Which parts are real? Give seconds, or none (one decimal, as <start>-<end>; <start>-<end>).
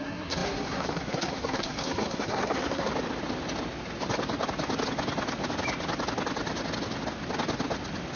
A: 2.9-8.2